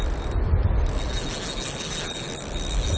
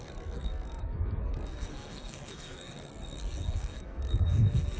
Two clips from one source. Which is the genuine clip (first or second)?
first